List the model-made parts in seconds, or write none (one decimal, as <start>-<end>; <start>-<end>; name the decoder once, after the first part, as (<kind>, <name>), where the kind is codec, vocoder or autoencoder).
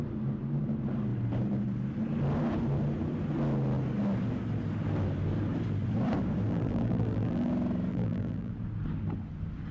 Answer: 6.5-7.5 (vocoder, BigVGAN v2); 7.9-8.5